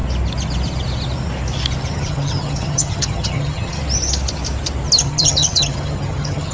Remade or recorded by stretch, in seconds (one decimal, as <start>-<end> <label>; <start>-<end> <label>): 0.0-1.9 recorded; 1.9-3.8 remade; 3.8-5.0 recorded; 5.0-6.5 remade